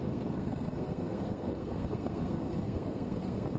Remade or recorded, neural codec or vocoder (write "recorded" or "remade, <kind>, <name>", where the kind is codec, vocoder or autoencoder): remade, codec, SNAC